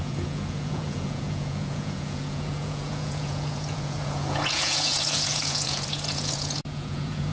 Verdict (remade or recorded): remade